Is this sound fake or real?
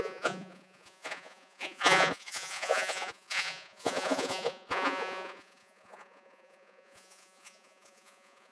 fake